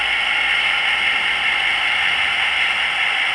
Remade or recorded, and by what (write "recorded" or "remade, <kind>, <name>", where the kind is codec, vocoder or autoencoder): recorded